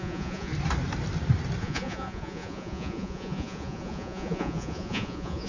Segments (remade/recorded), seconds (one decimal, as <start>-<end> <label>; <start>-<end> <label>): 0.0-0.5 remade; 0.5-1.6 recorded; 1.6-5.5 remade